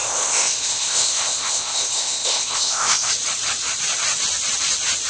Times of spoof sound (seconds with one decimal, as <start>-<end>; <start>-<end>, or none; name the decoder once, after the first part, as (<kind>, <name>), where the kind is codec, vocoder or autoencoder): 0.0-3.1 (codec, ZipCodec)